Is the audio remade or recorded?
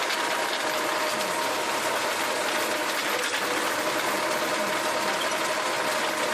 recorded